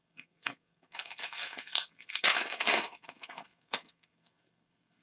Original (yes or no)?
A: no